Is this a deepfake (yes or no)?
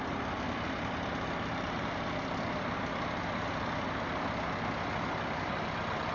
no